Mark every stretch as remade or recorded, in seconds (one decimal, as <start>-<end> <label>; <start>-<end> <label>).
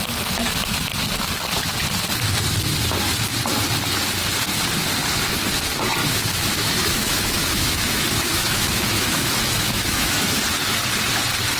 0.0-6.0 recorded; 6.0-10.4 remade; 10.4-11.6 recorded